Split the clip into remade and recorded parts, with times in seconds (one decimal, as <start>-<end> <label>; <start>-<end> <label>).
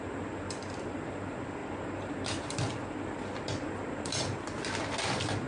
0.0-5.5 recorded